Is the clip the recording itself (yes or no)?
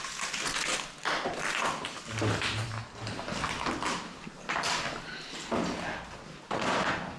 yes